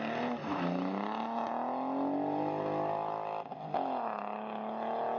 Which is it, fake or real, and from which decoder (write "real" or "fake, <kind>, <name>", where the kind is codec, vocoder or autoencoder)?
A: real